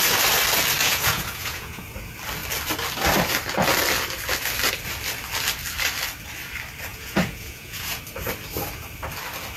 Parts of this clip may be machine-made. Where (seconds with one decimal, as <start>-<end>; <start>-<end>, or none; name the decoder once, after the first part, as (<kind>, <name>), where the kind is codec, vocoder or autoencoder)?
0.8-1.8 (vocoder, Vocos); 6.9-8.0